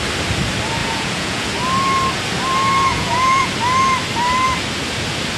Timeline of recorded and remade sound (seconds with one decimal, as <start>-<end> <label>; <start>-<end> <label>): 0.0-0.8 recorded; 0.8-1.4 remade; 1.4-2.9 recorded; 2.9-3.5 remade; 3.5-5.4 recorded